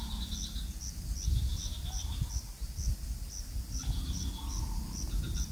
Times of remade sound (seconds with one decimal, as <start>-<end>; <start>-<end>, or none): none